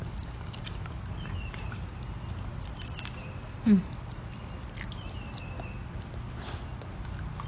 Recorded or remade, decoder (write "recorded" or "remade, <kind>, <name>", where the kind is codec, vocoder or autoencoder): recorded